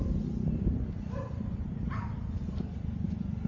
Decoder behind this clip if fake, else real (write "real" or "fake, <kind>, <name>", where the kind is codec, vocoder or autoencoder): real